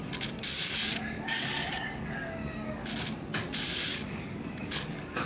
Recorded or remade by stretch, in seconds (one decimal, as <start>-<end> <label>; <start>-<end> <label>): 0.0-0.6 recorded; 0.6-2.9 remade; 2.9-3.9 recorded; 3.9-5.3 remade

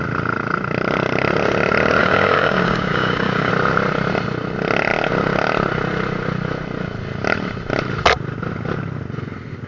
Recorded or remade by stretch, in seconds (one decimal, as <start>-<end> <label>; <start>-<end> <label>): 0.0-2.0 recorded; 2.0-3.5 remade; 3.5-9.7 recorded

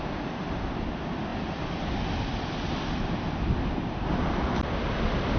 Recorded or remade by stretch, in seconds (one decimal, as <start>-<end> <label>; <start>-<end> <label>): 0.0-5.4 recorded